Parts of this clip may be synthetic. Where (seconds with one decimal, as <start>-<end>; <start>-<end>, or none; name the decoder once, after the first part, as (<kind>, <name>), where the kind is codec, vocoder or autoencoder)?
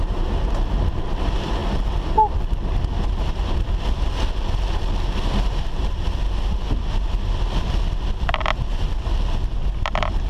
none